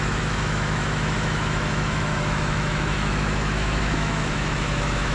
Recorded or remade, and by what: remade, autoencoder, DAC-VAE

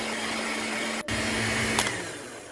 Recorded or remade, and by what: recorded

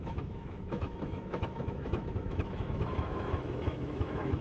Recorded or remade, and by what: remade, autoencoder, DAC-VAE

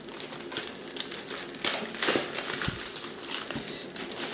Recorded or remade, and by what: recorded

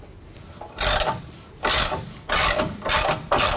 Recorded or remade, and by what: recorded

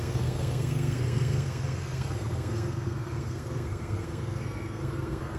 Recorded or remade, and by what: remade, codec, SNAC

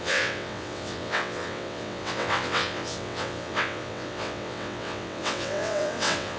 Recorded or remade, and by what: remade, vocoder, WaveNeXt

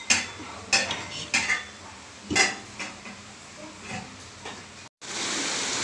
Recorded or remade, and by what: recorded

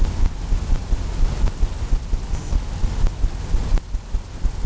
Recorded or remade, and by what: recorded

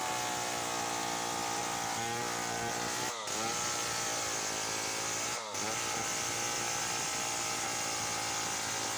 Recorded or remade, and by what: recorded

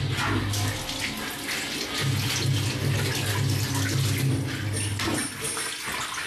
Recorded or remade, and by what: recorded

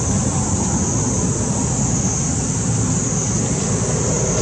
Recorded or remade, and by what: recorded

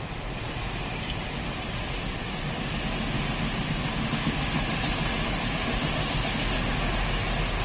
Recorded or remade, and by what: recorded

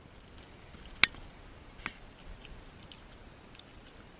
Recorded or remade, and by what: recorded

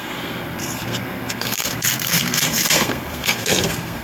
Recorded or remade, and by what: remade, codec, SNAC